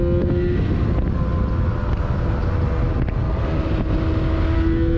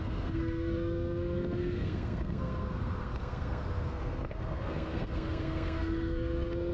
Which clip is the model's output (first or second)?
second